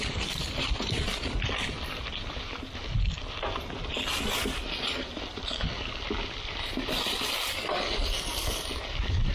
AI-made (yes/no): no